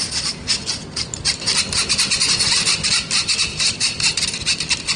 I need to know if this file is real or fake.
real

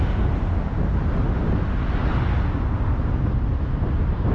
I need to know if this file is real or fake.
real